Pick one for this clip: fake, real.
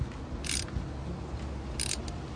real